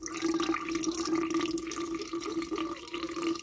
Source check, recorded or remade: recorded